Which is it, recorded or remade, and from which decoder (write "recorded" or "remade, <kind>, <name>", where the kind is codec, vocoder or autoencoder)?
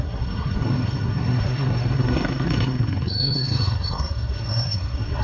remade, codec, SNAC